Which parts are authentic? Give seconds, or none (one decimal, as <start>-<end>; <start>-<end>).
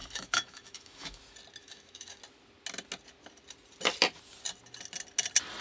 1.2-1.6; 2.2-5.6